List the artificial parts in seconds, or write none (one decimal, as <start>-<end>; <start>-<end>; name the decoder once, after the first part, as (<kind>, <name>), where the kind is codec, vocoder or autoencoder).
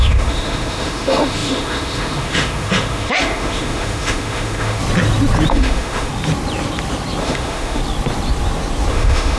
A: 0.0-4.8 (autoencoder, DAC-VAE); 5.5-6.1; 7.2-7.8; 8.9-9.4